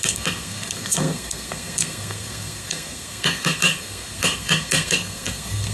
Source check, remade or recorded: remade